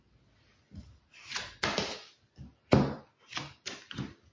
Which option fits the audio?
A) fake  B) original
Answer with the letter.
B